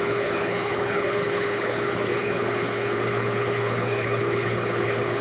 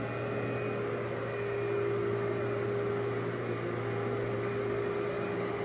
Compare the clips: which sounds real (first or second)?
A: second